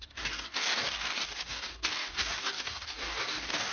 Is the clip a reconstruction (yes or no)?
yes